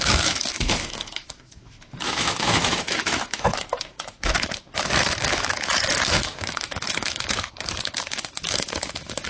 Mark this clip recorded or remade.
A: remade